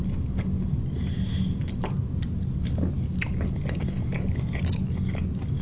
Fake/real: real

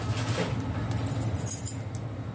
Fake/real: real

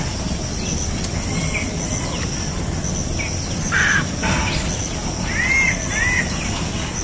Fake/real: real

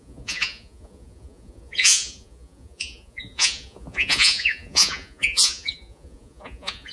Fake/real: fake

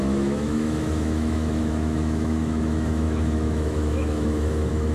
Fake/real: fake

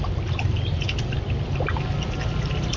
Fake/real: real